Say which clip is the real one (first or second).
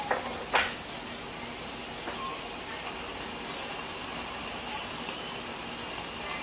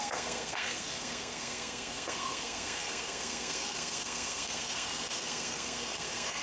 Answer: first